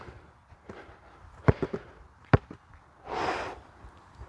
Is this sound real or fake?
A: real